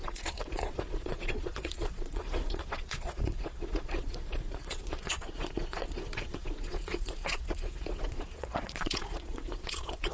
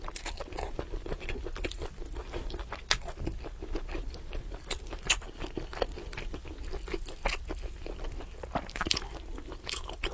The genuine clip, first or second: second